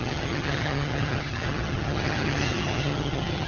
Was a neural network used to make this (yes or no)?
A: yes